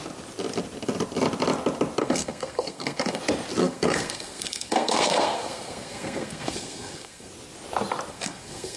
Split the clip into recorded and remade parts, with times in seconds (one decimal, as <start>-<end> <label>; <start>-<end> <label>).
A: 0.0-2.0 recorded; 2.0-3.2 remade; 3.2-3.6 recorded; 3.6-7.3 remade; 7.3-8.1 recorded; 8.1-8.8 remade